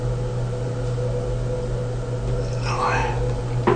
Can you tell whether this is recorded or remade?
recorded